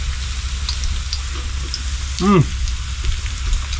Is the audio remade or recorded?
recorded